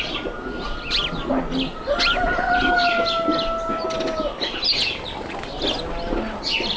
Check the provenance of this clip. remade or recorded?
recorded